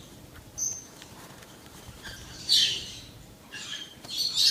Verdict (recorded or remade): remade